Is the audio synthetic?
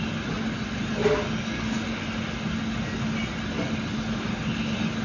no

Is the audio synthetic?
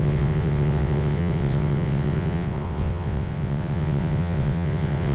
yes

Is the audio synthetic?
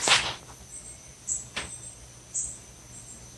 no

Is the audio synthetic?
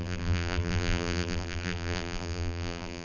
yes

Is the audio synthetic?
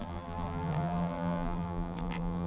yes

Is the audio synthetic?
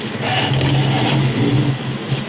no